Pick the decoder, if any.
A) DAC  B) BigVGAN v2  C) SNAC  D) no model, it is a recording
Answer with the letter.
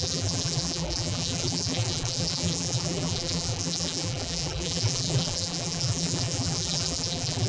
B